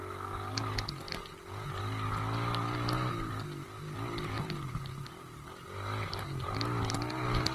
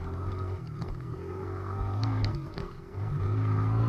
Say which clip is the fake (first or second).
second